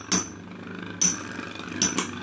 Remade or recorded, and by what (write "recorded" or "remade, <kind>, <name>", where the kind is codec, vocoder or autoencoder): recorded